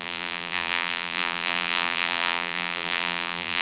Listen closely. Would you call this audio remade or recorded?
remade